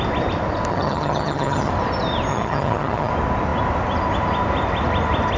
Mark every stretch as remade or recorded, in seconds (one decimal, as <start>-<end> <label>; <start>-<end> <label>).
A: 0.0-0.7 recorded; 0.7-1.7 remade; 1.7-2.3 recorded; 2.3-3.1 remade; 3.1-5.4 recorded